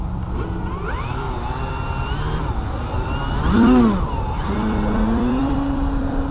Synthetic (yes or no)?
yes